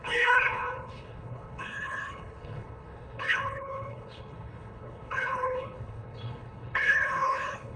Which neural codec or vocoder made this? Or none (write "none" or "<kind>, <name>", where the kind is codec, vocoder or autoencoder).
codec, HILCodec